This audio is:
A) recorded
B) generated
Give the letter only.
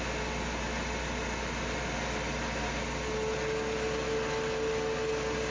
A